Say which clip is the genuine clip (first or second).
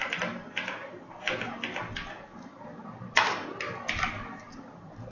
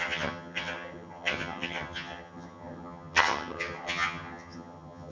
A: first